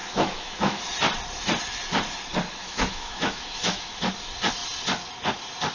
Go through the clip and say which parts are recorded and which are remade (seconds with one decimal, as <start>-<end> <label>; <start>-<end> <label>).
0.0-0.8 remade; 0.8-2.6 recorded; 2.6-4.0 remade; 4.0-5.7 recorded